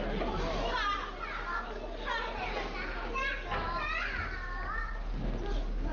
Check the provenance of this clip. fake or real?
real